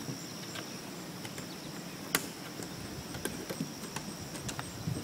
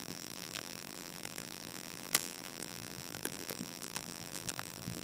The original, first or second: first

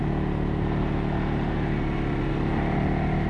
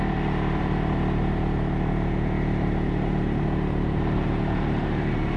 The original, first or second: first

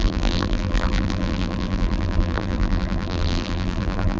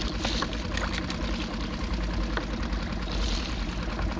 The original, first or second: second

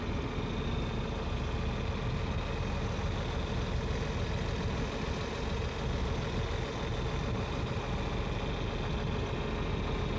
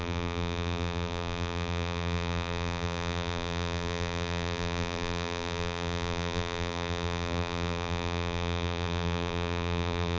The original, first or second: first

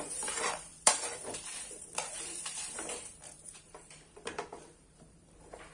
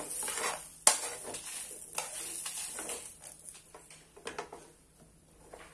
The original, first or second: second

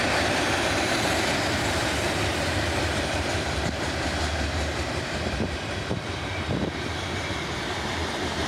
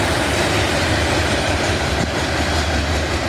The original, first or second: second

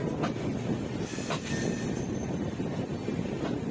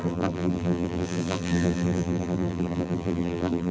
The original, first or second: first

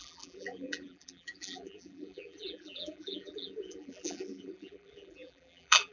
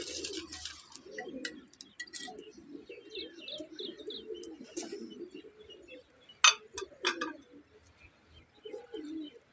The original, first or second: second